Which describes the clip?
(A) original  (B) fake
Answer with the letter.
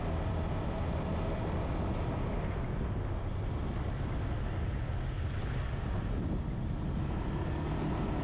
A